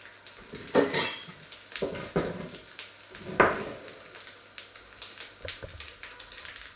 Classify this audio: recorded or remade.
recorded